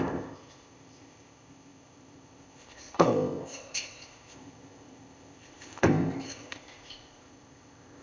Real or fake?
fake